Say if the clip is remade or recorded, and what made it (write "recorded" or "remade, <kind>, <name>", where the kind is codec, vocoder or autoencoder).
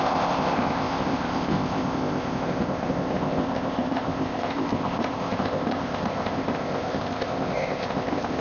remade, codec, ZipCodec